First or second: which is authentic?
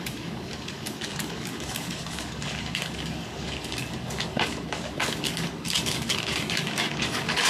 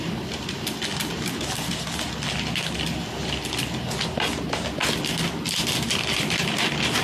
second